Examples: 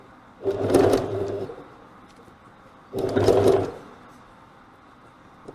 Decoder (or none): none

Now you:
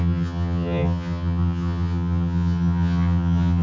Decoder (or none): vocoder, HiFi-GAN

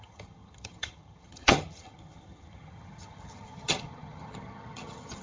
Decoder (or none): vocoder, HiFi-GAN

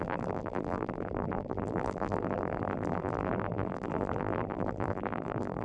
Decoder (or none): vocoder, BigVGAN v2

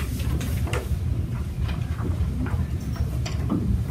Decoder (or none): vocoder, BigVGAN v2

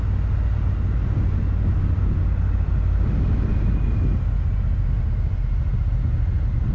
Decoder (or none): none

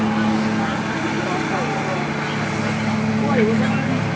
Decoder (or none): none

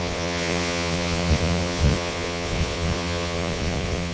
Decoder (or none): vocoder, Vocos